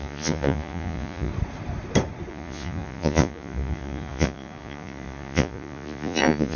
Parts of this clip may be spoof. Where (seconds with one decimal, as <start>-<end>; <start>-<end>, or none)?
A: 0.0-1.3; 2.3-6.6